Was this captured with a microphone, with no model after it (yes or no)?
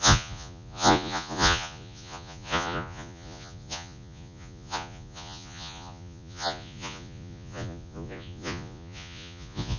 no